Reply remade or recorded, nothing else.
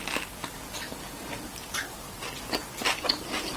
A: recorded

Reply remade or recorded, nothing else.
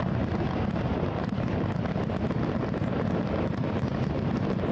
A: recorded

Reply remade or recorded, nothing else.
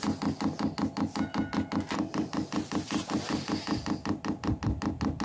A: recorded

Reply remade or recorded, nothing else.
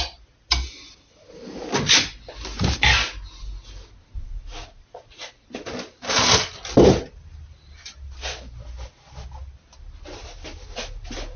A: recorded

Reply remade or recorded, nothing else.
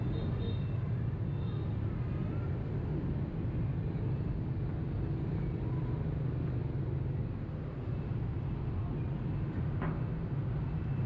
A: recorded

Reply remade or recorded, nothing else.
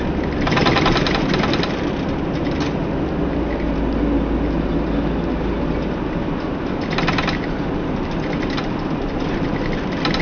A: recorded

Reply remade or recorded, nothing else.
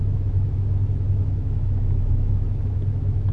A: remade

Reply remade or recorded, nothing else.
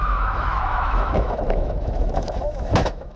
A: remade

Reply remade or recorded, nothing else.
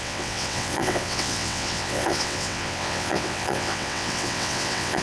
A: remade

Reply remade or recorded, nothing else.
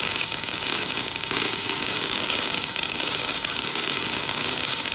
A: remade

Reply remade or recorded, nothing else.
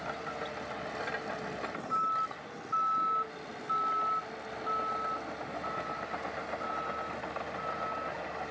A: recorded